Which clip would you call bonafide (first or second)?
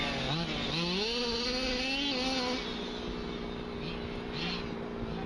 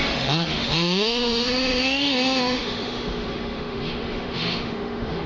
first